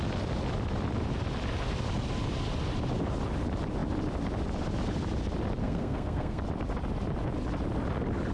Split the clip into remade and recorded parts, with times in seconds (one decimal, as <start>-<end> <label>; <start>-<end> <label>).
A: 0.0-5.6 recorded; 5.6-6.4 remade; 6.4-8.3 recorded